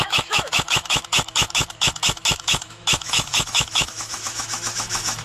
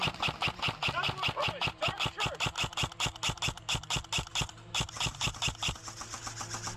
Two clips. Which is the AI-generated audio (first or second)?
first